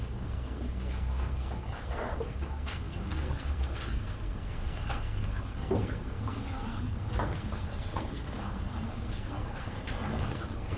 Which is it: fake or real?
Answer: fake